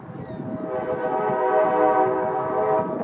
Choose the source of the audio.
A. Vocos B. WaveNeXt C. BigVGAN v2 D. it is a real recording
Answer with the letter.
D